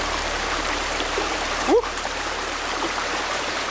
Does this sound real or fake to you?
fake